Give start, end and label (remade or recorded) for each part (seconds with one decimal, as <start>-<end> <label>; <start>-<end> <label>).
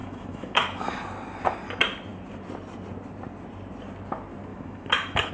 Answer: 0.0-0.9 remade; 0.9-4.5 recorded; 4.5-5.3 remade